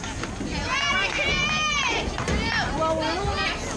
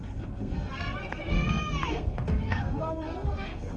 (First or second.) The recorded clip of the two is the first